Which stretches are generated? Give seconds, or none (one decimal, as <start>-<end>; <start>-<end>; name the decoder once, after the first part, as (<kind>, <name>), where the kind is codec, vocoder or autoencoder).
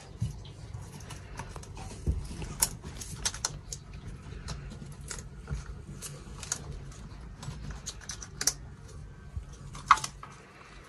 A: 0.6-2.9 (vocoder, BigVGAN v2)